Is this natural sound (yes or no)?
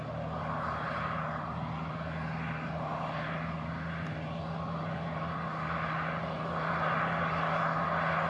yes